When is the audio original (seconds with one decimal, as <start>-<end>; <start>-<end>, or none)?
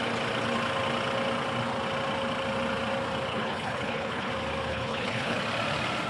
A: 0.0-3.3; 4.3-4.7; 5.4-6.1